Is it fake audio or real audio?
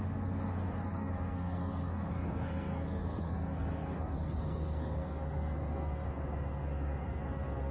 fake